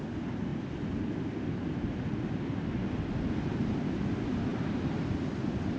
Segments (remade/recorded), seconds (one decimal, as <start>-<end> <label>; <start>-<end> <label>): 0.0-4.5 recorded; 4.5-5.3 remade; 5.3-5.8 recorded